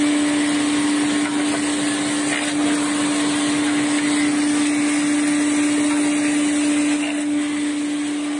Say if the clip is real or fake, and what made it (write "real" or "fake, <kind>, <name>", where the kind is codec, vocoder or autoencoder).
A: real